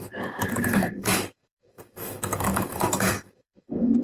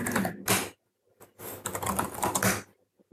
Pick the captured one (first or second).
second